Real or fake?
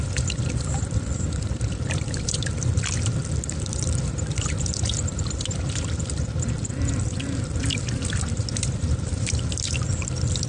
fake